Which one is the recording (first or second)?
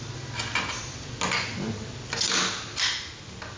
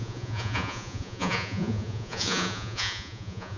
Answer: first